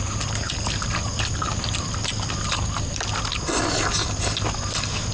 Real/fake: real